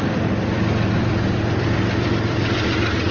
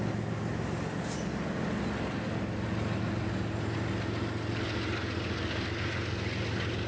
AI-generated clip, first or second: first